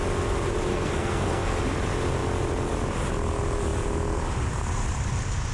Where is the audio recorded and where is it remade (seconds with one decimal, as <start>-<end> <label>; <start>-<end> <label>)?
0.0-0.7 recorded; 0.7-1.6 remade; 1.6-5.5 recorded